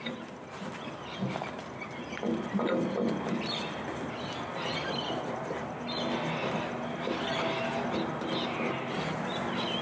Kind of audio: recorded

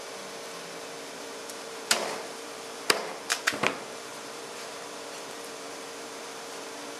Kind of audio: remade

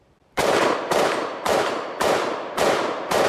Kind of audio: remade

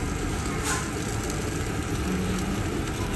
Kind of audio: recorded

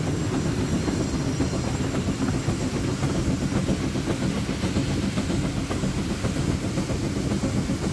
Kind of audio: recorded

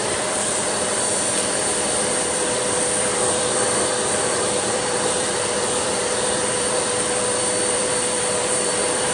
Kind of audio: remade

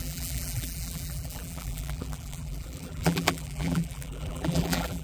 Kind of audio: remade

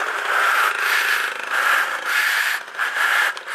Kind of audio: recorded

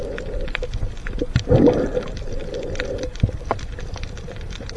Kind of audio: remade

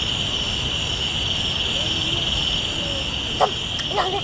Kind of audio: recorded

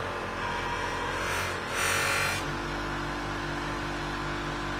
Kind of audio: recorded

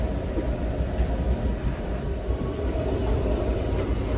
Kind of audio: remade